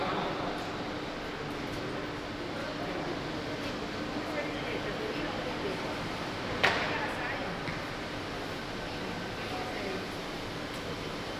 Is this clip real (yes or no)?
yes